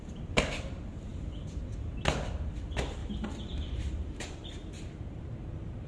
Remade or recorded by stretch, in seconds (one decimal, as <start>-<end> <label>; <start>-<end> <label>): 0.0-1.1 recorded; 1.1-1.9 remade; 1.9-3.0 recorded; 3.0-5.9 remade